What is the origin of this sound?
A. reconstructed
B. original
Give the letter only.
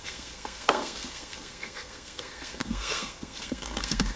A